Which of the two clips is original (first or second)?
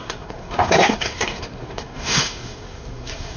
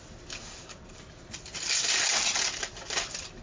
second